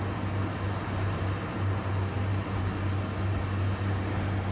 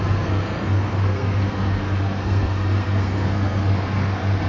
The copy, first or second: second